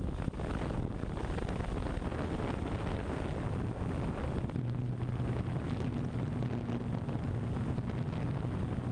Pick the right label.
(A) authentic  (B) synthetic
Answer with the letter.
A